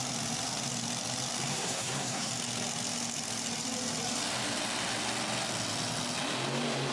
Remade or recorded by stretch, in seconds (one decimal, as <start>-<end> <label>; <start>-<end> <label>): 0.0-1.5 recorded; 1.5-2.3 remade; 2.3-6.9 recorded